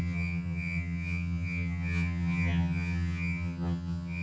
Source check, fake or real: fake